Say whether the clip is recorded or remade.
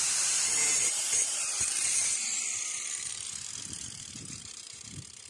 remade